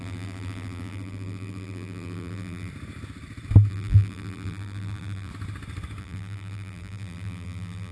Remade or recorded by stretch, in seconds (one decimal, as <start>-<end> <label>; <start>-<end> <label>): 0.0-2.7 remade; 2.7-3.7 recorded; 3.7-5.3 remade; 5.3-6.0 recorded; 6.0-7.9 remade